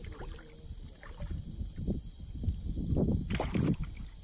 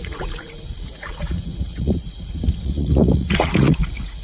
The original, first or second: first